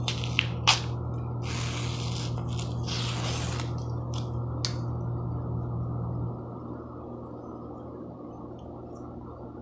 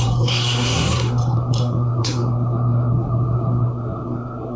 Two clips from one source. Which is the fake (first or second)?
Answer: second